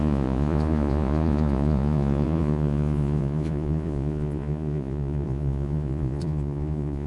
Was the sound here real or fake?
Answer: fake